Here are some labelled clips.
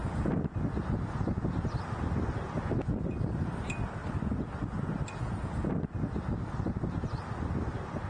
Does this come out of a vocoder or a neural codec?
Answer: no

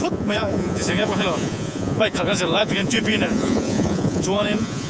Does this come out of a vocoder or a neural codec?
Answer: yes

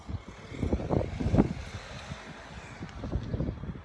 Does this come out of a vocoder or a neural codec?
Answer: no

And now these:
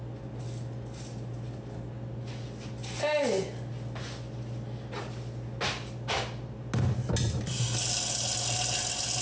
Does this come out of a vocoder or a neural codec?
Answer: no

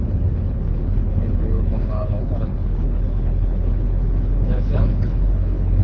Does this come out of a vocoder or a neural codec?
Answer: yes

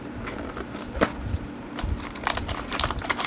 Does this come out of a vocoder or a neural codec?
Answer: yes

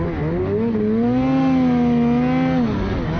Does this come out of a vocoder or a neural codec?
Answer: no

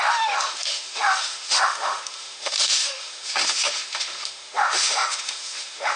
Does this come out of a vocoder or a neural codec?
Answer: yes